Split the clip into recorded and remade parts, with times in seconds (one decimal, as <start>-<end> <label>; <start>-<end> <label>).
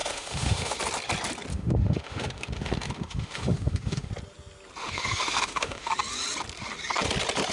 0.0-0.8 remade; 0.8-1.5 recorded; 1.5-4.1 remade; 4.1-4.8 recorded; 4.8-5.9 remade; 5.9-7.5 recorded